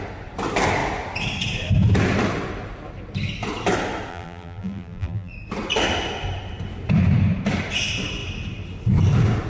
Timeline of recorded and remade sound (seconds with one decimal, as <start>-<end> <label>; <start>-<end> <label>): 0.0-4.1 recorded; 4.1-5.3 remade; 5.3-9.5 recorded